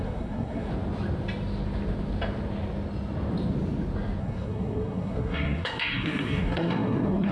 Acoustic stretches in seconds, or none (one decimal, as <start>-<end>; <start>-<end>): 0.7-4.2